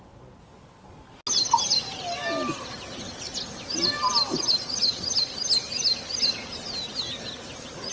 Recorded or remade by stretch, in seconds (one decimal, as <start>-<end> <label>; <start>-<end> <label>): 0.0-7.9 recorded